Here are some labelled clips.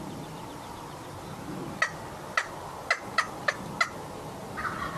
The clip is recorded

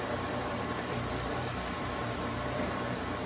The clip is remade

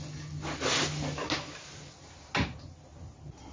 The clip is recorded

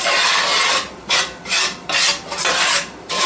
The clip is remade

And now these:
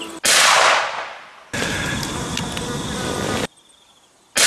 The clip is recorded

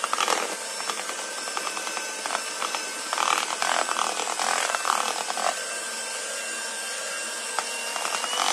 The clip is remade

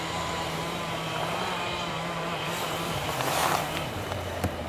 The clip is remade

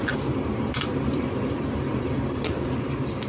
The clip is remade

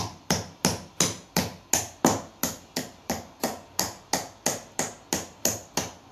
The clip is recorded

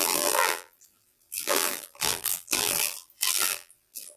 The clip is remade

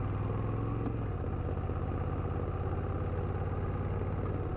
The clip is recorded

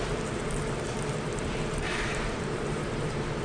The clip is remade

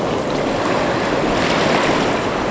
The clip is recorded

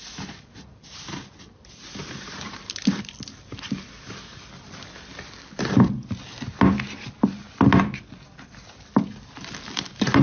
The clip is recorded